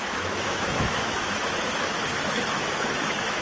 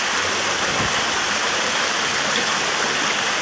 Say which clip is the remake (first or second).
first